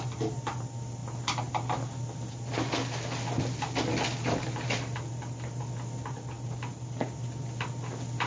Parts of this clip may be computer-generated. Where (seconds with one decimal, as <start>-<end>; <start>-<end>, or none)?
none